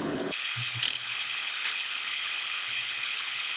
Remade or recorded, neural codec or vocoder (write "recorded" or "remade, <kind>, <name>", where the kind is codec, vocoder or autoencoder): remade, codec, HILCodec